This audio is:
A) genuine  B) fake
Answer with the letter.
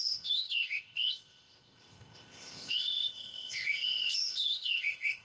B